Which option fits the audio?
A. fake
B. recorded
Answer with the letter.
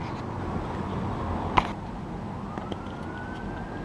B